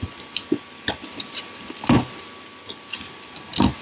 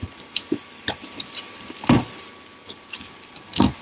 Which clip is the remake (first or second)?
second